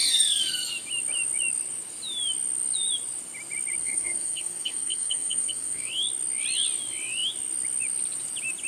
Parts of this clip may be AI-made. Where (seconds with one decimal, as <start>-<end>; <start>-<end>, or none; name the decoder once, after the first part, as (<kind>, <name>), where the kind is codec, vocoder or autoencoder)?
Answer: 0.0-0.7 (codec, SNAC); 3.8-5.9